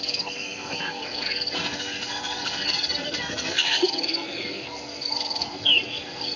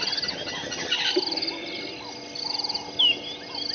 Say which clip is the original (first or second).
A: second